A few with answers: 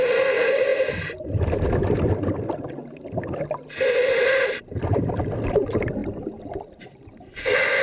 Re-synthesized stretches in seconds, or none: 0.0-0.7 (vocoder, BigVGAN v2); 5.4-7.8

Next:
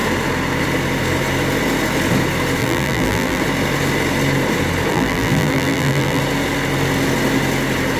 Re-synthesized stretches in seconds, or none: 2.6-3.4 (vocoder, BigVGAN v2); 4.9-6.2

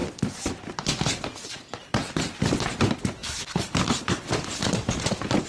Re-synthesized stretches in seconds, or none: 3.2-4.1 (vocoder, BigVGAN v2)

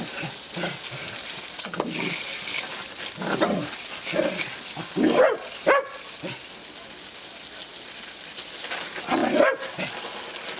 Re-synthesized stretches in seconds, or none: none

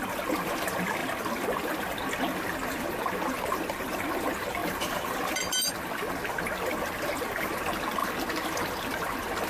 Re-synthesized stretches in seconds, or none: 4.6-5.1 (vocoder, BigVGAN v2)

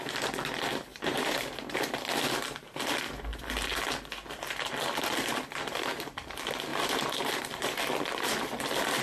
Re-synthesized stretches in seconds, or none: 0.9-1.7 (vocoder, BigVGAN v2); 6.7-7.8

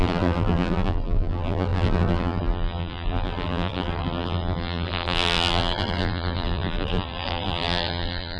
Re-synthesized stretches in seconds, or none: 0.0-8.4 (vocoder, BigVGAN v2)